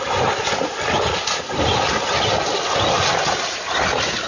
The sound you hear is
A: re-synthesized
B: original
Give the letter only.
B